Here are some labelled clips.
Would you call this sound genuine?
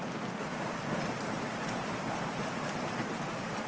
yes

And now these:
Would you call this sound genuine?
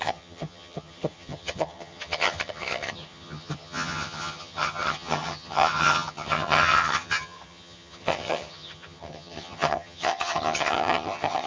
no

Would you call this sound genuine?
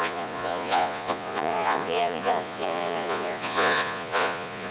no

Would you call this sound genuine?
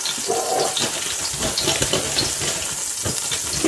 yes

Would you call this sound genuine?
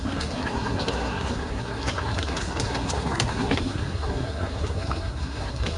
no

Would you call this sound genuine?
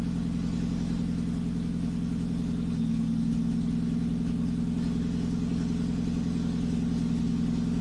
yes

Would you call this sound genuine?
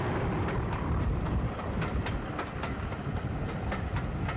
yes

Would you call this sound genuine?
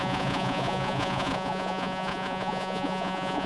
no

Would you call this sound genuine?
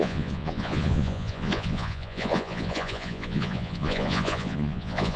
no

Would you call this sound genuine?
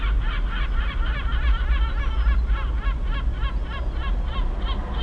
yes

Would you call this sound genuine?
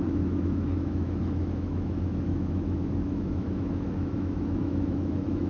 no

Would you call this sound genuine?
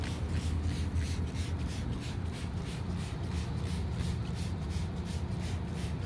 yes